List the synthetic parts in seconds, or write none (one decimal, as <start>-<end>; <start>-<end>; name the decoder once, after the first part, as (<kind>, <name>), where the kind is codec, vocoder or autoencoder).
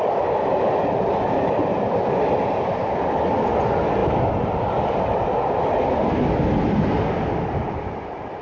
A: none